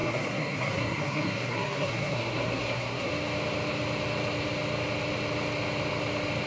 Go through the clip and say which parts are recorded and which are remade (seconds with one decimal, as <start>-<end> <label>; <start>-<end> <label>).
0.0-3.1 remade; 3.1-6.5 recorded